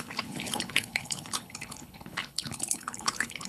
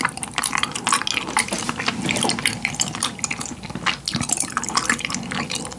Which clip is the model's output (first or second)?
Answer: first